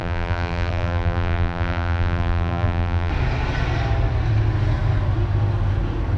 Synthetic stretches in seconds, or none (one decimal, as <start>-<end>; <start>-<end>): 0.0-3.1